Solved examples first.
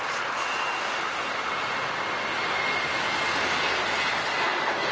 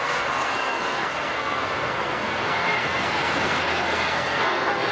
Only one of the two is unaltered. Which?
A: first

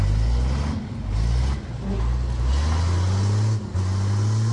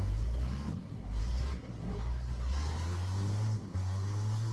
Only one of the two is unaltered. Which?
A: first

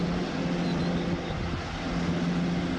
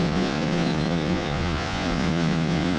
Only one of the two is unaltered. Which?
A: first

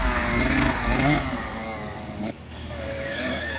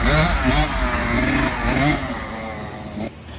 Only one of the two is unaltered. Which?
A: second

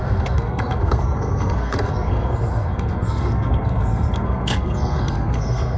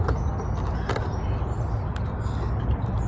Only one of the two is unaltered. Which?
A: second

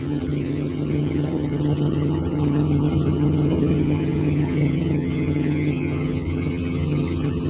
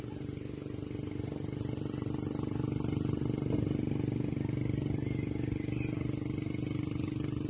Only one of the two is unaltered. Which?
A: second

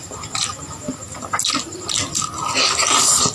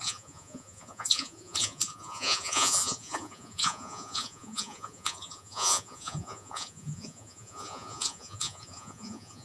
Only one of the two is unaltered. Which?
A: first